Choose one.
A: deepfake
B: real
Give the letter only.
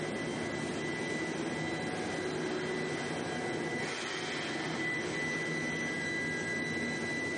B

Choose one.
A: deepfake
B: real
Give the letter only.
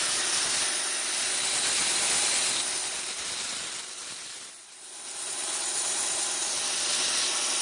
B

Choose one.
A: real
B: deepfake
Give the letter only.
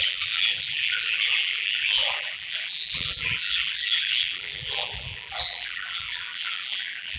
B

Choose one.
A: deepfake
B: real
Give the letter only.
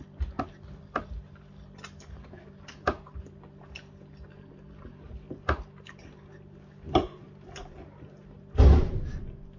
B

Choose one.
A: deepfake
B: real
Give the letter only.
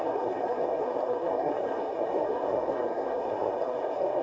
A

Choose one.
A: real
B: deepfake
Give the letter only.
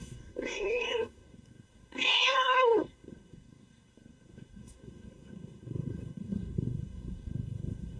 B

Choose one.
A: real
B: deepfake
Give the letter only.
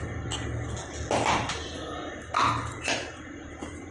A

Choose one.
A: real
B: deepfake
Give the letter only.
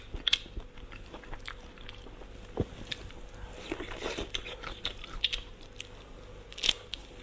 A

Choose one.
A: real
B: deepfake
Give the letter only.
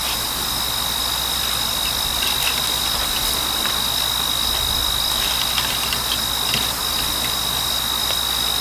A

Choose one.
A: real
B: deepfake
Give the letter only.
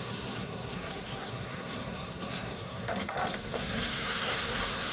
B